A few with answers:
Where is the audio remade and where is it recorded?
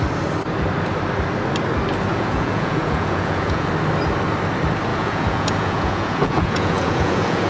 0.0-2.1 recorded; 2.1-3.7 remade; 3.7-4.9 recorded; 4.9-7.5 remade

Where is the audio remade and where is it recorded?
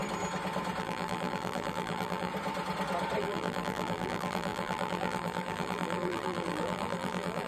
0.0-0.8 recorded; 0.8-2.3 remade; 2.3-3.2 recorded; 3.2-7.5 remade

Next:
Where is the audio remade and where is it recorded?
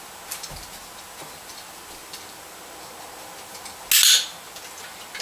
0.0-5.2 recorded